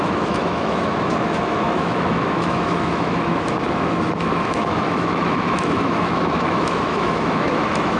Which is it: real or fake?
fake